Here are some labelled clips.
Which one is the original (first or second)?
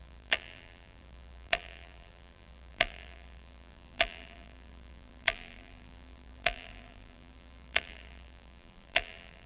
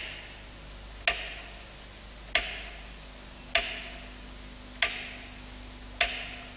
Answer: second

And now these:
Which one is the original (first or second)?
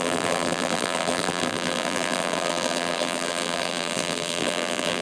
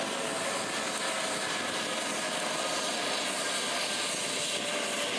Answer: second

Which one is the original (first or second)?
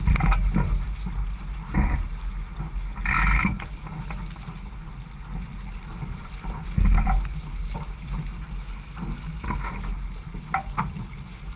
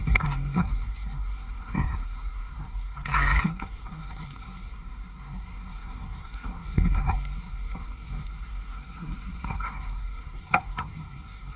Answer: first